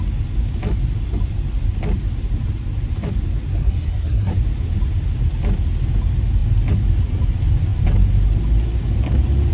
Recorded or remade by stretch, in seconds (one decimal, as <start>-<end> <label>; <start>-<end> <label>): 0.0-3.6 recorded; 3.6-4.3 remade; 4.3-9.5 recorded